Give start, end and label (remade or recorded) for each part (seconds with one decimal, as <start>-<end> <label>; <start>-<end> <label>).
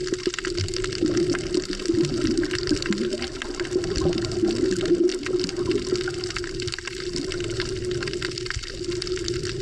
0.0-2.1 recorded; 2.1-5.1 remade; 5.1-6.3 recorded; 6.3-7.8 remade; 7.8-9.2 recorded; 9.2-9.6 remade